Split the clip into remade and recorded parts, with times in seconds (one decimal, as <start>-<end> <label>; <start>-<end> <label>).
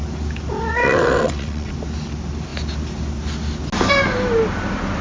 0.0-0.8 recorded; 0.8-1.7 remade; 1.7-5.0 recorded